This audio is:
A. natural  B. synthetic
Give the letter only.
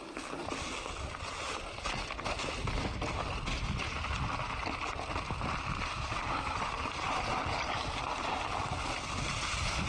A